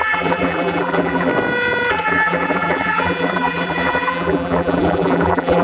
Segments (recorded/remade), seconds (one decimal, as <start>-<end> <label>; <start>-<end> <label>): 0.0-1.3 remade; 1.3-1.9 recorded; 1.9-5.6 remade

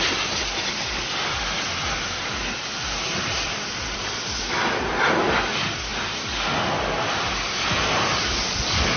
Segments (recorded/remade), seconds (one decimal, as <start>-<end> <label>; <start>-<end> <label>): 0.0-5.9 remade; 5.9-7.6 recorded; 7.6-9.0 remade

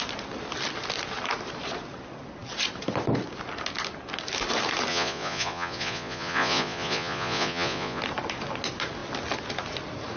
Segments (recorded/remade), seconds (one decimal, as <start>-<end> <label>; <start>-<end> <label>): 0.0-4.9 recorded; 4.9-8.0 remade; 8.0-10.2 recorded

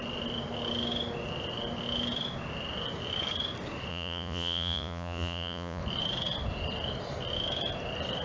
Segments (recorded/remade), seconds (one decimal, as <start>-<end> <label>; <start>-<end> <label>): 0.0-3.9 recorded; 3.9-5.8 remade; 5.8-8.2 recorded

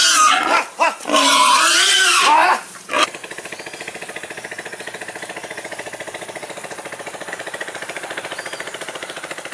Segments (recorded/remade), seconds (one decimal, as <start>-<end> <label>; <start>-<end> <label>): 0.0-3.2 remade; 3.2-7.3 recorded; 7.3-9.5 remade

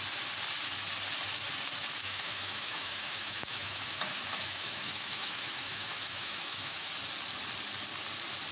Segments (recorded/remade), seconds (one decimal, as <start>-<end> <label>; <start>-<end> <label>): 0.0-2.0 recorded; 2.0-6.9 remade; 6.9-8.5 recorded

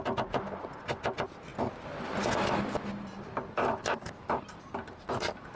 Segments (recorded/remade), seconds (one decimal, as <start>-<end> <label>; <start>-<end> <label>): 0.0-5.6 recorded